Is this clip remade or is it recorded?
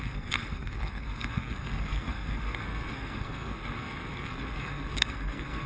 remade